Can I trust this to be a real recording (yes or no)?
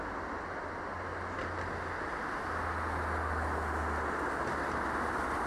yes